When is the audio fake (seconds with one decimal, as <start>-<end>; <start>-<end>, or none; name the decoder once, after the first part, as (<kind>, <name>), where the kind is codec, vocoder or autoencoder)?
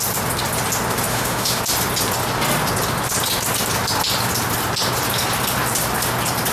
1.1-1.6 (autoencoder, DAC-VAE)